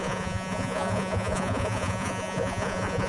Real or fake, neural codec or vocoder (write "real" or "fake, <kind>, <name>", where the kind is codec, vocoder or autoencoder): fake, vocoder, Vocos